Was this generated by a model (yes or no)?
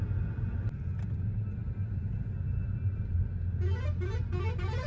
no